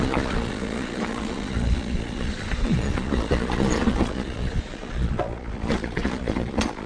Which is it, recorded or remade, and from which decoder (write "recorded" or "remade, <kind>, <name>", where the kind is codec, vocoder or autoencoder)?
remade, vocoder, Vocos